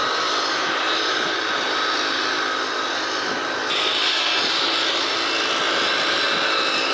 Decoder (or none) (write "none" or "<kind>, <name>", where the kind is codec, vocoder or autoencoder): none